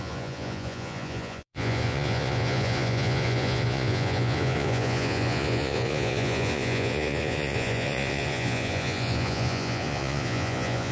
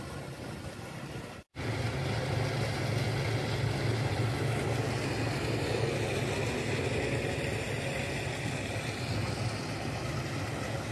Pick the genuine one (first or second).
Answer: second